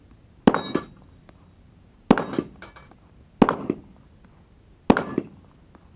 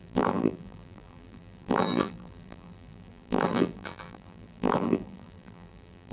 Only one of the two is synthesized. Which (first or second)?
second